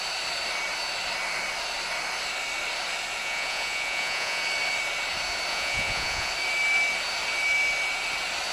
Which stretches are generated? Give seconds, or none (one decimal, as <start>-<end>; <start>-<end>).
3.2-4.4; 5.5-6.3